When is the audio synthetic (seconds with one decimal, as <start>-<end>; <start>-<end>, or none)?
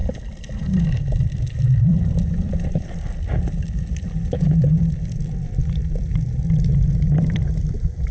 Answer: 0.0-6.1; 6.7-8.1